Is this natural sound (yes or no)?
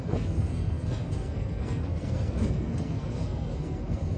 no